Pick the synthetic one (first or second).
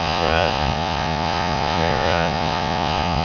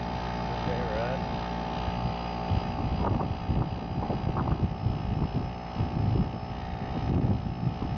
first